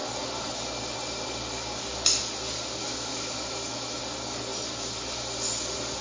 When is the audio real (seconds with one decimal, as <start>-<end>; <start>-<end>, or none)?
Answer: 0.0-2.8; 4.0-6.0